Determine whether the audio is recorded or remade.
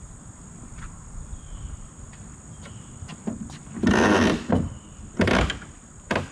recorded